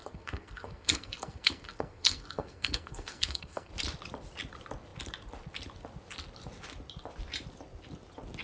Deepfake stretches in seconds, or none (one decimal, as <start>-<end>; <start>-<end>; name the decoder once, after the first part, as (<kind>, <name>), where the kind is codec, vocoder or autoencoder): 0.0-3.7 (codec, SNAC)